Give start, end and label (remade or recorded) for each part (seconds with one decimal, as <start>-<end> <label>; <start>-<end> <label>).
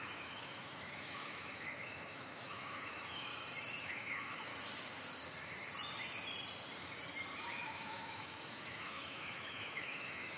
0.0-3.3 remade; 3.3-3.8 recorded; 3.8-4.5 remade; 4.5-7.5 recorded; 7.5-10.4 remade